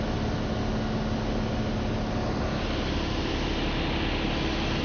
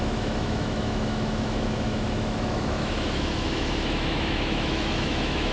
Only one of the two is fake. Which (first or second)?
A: second